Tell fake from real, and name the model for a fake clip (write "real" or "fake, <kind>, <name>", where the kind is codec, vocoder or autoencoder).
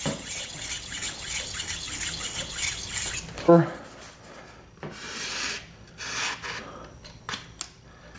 real